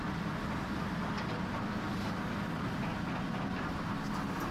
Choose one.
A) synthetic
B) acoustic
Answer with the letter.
B